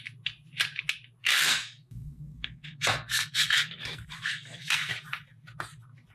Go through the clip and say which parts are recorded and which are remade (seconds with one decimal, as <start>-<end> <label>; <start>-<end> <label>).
0.0-1.2 recorded; 1.2-4.9 remade; 4.9-6.1 recorded